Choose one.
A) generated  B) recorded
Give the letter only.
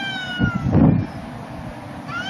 B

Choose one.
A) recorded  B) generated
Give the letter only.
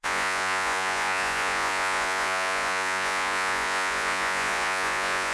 B